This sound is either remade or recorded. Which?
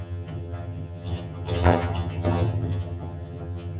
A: remade